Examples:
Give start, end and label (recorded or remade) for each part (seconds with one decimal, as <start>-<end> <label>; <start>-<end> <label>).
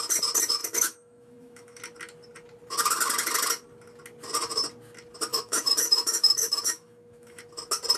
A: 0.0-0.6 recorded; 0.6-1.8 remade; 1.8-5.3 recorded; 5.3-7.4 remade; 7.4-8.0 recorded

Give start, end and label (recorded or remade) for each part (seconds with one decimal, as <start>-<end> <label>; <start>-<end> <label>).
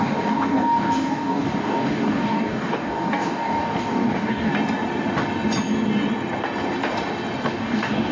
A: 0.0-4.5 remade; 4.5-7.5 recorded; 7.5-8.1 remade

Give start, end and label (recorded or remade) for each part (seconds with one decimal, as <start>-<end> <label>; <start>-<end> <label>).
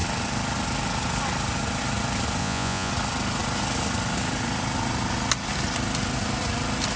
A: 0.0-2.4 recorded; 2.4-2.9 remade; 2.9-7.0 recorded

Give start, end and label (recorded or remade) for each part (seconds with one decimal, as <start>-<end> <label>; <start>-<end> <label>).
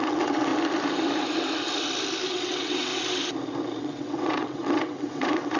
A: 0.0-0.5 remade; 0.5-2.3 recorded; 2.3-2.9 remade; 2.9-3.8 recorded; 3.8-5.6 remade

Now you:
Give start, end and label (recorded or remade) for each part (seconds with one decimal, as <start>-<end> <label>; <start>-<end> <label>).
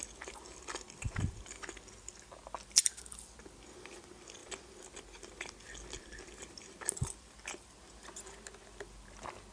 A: 0.0-9.5 recorded